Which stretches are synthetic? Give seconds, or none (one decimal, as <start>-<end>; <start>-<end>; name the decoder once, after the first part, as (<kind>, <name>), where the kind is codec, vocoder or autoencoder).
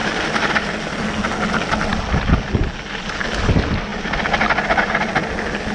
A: none